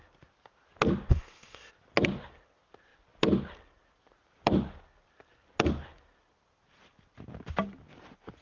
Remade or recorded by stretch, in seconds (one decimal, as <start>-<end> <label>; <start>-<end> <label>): 0.0-1.1 recorded; 1.1-1.7 remade; 1.7-8.4 recorded